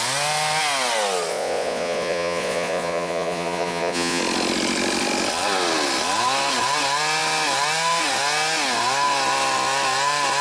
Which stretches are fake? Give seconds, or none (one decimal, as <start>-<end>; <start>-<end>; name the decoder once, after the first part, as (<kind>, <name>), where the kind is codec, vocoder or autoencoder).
1.3-4.2 (vocoder, Vocos)